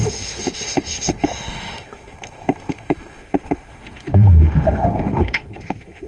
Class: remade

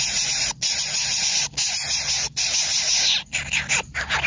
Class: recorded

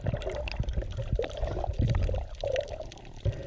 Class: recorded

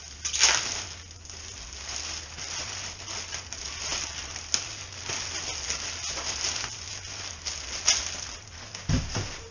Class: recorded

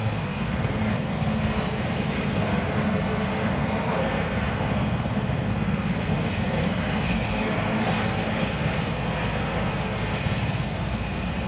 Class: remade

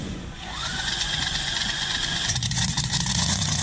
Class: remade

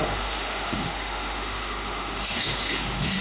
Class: remade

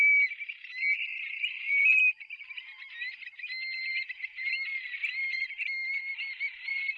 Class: recorded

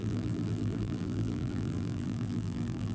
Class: remade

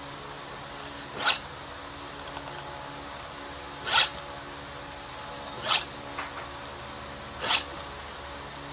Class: recorded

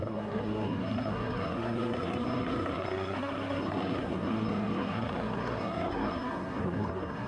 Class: remade